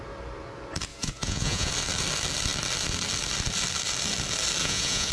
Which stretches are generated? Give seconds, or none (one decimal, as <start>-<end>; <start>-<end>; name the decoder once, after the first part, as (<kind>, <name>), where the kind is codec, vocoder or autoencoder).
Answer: 0.9-1.7 (vocoder, Vocos); 4.6-5.1